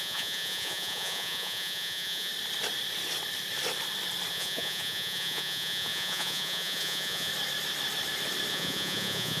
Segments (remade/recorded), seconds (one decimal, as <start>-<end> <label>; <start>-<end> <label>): 0.0-2.3 remade; 2.3-4.3 recorded; 4.3-7.3 remade; 7.3-8.5 recorded; 8.5-9.4 remade